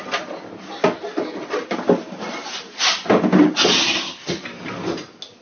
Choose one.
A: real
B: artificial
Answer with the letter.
A